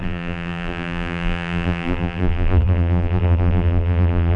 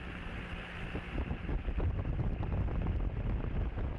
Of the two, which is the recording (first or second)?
second